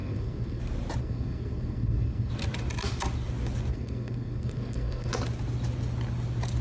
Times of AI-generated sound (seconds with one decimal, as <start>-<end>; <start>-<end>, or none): 0.0-0.6; 1.0-2.3; 3.7-5.1